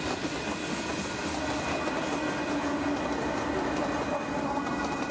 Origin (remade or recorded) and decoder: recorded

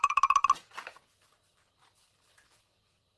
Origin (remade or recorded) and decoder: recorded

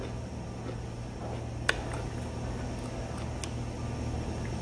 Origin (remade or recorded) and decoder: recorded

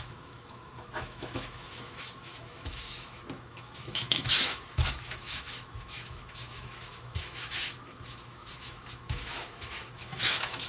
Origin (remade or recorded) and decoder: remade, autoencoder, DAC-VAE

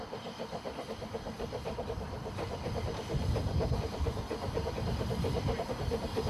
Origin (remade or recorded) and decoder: remade, vocoder, BigVGAN v2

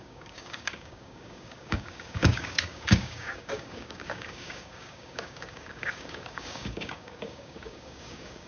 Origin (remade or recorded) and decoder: remade, codec, DAC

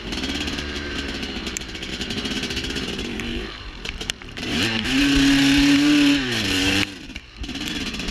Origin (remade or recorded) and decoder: remade, vocoder, BigVGAN v2